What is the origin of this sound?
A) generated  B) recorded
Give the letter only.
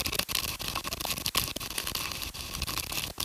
B